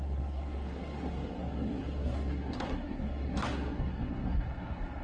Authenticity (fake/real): fake